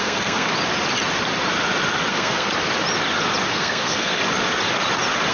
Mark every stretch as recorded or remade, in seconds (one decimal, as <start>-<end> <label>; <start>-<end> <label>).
0.0-0.5 remade; 0.5-2.1 recorded; 2.1-2.5 remade; 2.5-3.5 recorded; 3.5-4.2 remade; 4.2-5.3 recorded